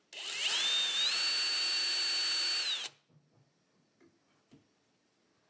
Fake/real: real